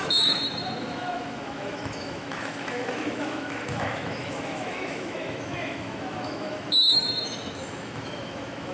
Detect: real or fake fake